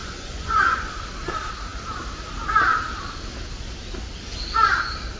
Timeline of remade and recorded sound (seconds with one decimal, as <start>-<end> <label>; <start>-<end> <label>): 0.0-0.9 remade; 0.9-5.2 recorded